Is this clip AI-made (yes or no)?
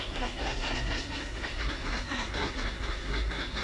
yes